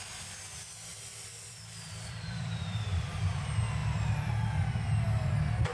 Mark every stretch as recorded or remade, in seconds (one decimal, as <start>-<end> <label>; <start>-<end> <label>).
0.0-0.9 recorded; 0.9-3.3 remade; 3.3-5.7 recorded